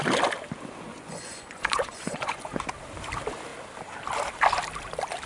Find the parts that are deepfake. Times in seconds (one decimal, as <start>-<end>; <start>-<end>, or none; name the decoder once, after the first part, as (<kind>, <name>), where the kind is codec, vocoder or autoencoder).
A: 0.9-2.6 (vocoder, Vocos)